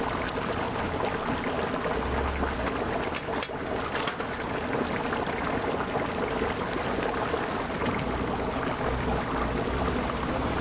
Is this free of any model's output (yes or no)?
yes